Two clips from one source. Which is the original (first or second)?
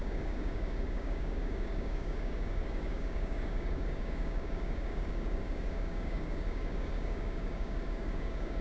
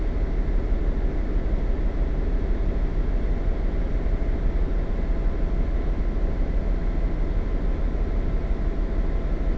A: second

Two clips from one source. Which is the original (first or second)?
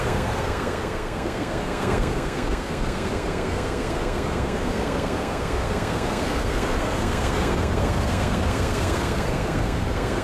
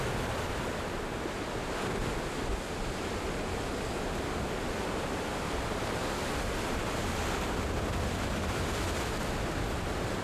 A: second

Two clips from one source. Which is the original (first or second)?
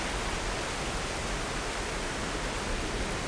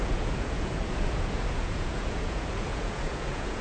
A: first